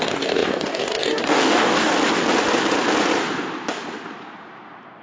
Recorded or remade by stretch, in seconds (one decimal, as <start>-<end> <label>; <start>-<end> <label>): 0.0-1.9 remade; 1.9-5.0 recorded